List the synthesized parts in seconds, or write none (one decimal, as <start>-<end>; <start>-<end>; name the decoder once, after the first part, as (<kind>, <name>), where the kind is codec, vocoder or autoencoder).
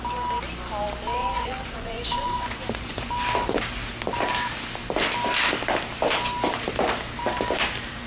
1.2-3.1 (vocoder, Vocos)